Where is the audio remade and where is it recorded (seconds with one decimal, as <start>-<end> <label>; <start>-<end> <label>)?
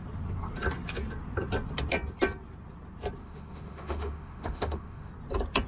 0.0-3.2 recorded; 3.2-5.1 remade; 5.1-5.7 recorded